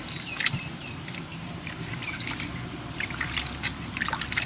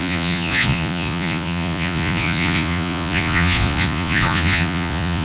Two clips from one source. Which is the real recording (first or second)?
first